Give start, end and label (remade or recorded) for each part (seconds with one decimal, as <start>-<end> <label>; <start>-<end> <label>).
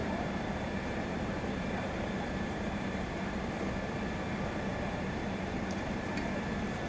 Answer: 0.0-3.6 remade; 3.6-4.7 recorded; 4.7-6.1 remade; 6.1-6.9 recorded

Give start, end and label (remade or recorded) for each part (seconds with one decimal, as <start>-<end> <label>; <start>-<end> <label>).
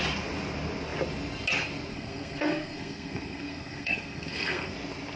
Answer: 0.0-1.9 recorded; 1.9-4.7 remade; 4.7-5.2 recorded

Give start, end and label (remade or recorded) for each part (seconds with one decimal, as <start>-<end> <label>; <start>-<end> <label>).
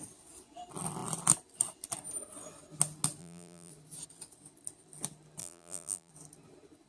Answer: 0.0-3.2 recorded; 3.2-3.7 remade; 3.7-5.4 recorded; 5.4-6.1 remade; 6.1-6.9 recorded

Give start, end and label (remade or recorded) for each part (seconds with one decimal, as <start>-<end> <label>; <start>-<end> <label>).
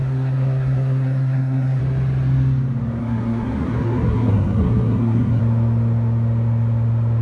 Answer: 0.0-1.8 remade; 1.8-3.0 recorded; 3.0-5.4 remade; 5.4-7.2 recorded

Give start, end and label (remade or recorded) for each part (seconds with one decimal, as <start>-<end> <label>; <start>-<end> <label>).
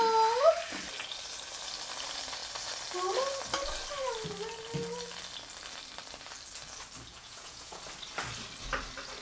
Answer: 0.0-7.1 recorded; 7.1-7.8 remade; 7.8-9.2 recorded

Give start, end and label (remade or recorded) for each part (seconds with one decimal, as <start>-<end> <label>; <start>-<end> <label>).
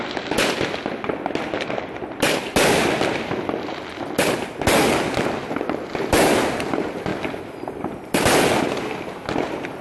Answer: 0.0-9.8 recorded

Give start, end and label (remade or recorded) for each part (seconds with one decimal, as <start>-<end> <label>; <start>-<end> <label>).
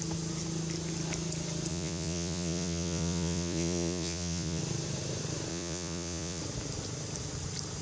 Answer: 0.0-1.7 recorded; 1.7-4.6 remade; 4.6-5.5 recorded; 5.5-6.4 remade; 6.4-7.8 recorded